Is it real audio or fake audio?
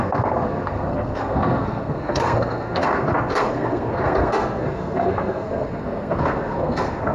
fake